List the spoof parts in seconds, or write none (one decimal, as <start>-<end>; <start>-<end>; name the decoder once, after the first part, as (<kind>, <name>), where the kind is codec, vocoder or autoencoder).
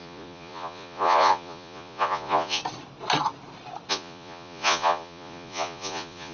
0.0-2.6 (vocoder, Vocos); 3.9-6.3